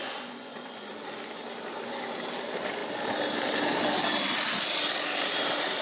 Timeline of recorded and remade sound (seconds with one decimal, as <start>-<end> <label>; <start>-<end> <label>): 0.0-0.9 remade; 0.9-5.8 recorded